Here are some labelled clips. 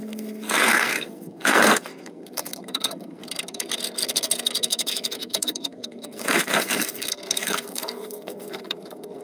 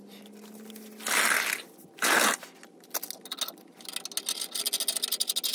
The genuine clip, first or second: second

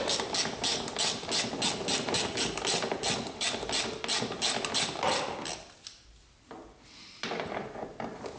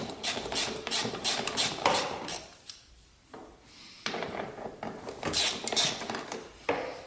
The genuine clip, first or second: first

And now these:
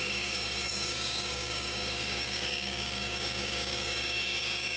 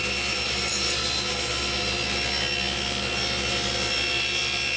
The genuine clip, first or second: second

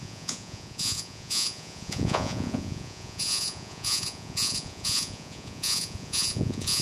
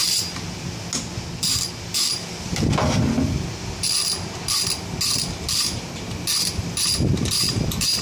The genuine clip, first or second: second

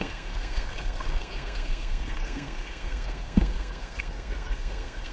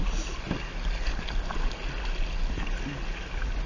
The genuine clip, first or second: second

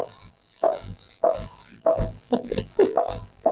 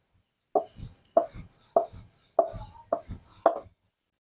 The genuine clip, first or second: second